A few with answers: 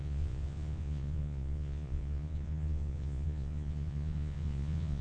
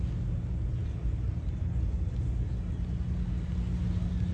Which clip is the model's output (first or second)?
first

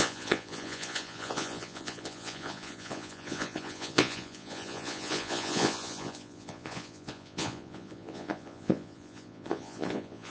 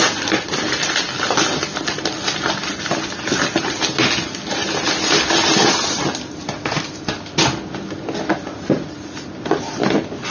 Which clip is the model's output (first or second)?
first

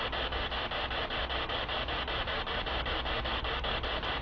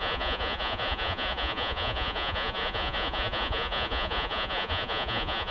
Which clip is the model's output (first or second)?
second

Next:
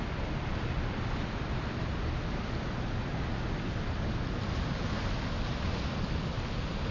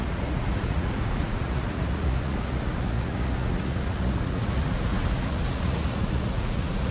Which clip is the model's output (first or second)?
second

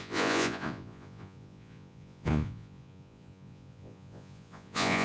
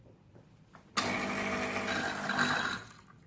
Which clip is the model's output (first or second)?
first